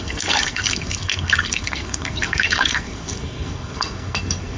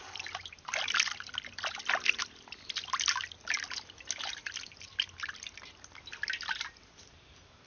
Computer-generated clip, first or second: first